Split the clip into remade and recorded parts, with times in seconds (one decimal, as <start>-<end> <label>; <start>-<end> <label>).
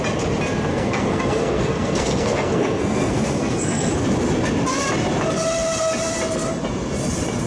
0.0-0.7 recorded; 0.7-3.9 remade; 3.9-7.5 recorded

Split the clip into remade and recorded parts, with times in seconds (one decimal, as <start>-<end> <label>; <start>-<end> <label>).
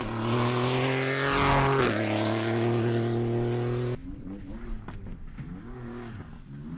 0.0-6.8 recorded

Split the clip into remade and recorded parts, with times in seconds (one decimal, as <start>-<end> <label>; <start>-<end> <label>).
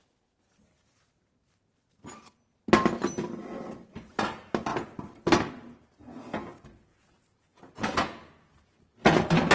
0.0-6.9 recorded; 6.9-8.8 remade; 8.8-9.5 recorded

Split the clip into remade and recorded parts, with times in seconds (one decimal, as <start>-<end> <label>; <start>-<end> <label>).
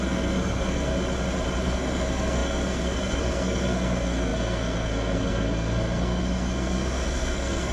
0.0-0.9 remade; 0.9-1.6 recorded; 1.6-7.7 remade